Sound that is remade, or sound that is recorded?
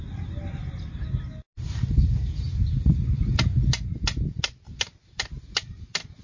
recorded